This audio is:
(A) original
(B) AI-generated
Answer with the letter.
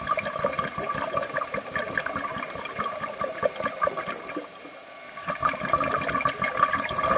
A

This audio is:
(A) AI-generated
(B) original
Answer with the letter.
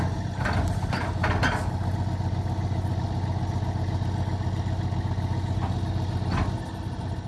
B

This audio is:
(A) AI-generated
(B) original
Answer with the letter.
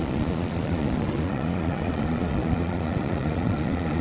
A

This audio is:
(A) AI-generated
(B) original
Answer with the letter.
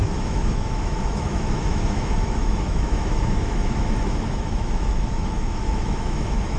A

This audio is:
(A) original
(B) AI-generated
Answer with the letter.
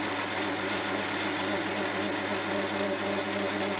A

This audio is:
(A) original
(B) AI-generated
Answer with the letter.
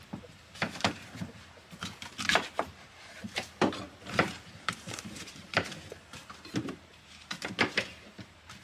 B